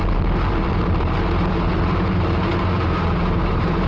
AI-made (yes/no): yes